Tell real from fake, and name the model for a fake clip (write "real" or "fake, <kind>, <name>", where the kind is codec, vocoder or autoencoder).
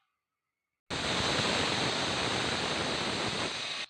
real